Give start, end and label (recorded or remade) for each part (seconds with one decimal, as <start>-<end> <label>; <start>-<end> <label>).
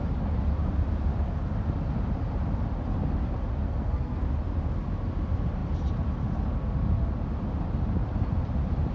0.0-3.6 recorded; 3.6-4.2 remade; 4.2-8.9 recorded